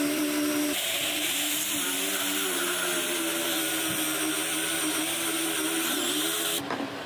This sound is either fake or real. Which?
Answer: fake